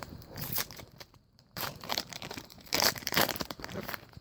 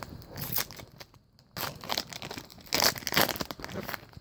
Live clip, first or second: second